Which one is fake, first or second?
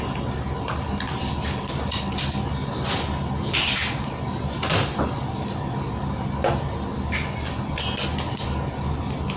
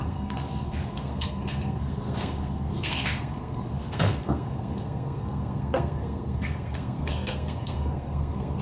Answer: second